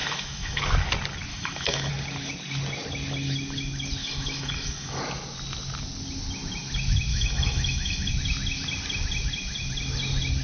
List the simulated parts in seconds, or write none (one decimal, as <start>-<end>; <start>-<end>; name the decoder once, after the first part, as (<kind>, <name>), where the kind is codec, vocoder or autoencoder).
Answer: 0.0-0.6 (autoencoder, DAC-VAE); 1.3-1.9; 4.0-5.0; 7.1-8.1